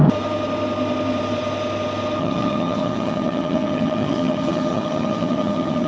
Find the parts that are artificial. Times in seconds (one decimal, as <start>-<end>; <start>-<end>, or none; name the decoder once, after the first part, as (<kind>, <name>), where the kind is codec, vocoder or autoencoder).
2.2-5.9 (vocoder, HiFi-GAN)